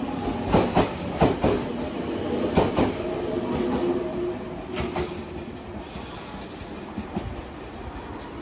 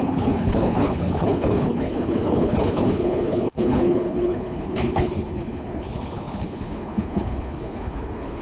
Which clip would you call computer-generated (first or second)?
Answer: second